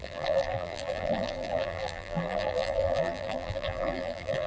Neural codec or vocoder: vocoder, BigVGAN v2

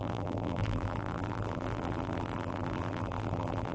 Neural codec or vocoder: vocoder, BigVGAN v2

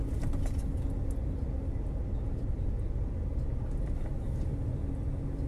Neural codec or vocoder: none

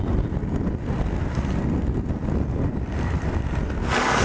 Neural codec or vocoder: none